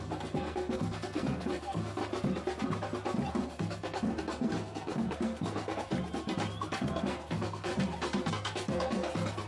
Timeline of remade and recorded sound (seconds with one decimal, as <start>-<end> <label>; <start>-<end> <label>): 0.0-2.0 remade; 2.0-3.3 recorded; 3.3-5.9 remade; 5.9-6.7 recorded; 6.7-7.7 remade; 7.7-8.3 recorded; 8.3-9.5 remade